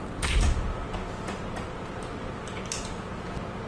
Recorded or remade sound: recorded